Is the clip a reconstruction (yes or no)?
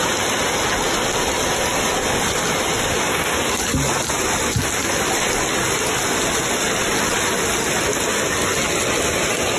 no